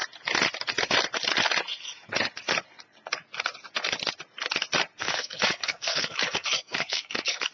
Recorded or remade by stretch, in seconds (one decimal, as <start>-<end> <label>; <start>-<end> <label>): 0.0-5.0 recorded; 5.0-7.5 remade